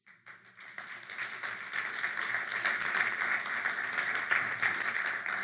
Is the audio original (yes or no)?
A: yes